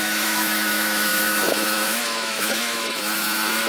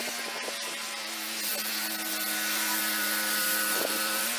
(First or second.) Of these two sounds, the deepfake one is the first